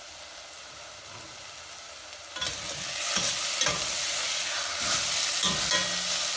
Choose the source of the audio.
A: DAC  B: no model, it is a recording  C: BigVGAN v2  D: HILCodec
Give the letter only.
B